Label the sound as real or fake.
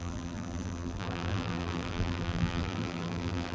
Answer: fake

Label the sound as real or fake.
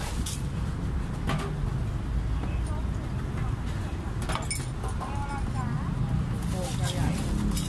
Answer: real